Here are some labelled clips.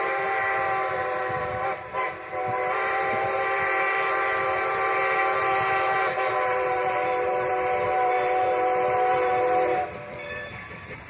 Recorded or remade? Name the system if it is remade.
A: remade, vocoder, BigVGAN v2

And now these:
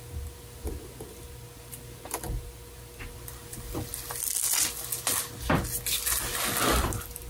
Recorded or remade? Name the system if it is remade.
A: recorded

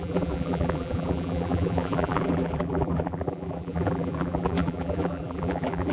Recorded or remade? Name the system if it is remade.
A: remade, vocoder, BigVGAN v2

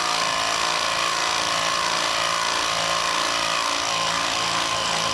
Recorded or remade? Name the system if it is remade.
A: remade, vocoder, BigVGAN v2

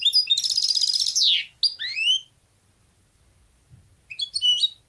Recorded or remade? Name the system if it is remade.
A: recorded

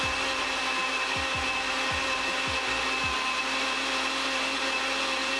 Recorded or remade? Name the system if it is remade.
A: recorded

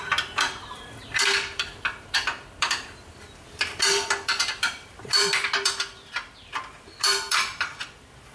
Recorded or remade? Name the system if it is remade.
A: remade, vocoder, BigVGAN v2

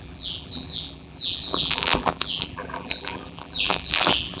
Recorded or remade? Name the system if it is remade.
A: remade, vocoder, BigVGAN v2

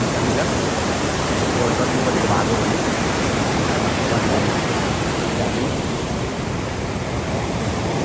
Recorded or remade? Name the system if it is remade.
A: remade, vocoder, BigVGAN v2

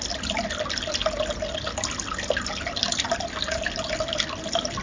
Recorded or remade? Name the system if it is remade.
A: recorded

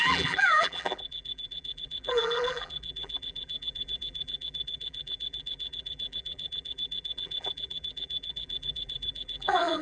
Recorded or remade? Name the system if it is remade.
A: remade, vocoder, BigVGAN v2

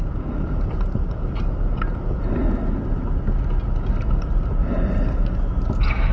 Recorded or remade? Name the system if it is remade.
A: recorded